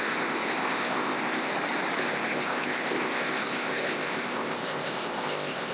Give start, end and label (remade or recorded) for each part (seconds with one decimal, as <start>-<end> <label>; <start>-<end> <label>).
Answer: 0.0-1.5 remade; 1.5-2.0 recorded; 2.0-5.7 remade